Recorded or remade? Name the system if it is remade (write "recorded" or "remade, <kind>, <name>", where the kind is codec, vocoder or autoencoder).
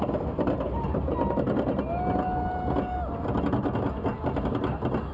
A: recorded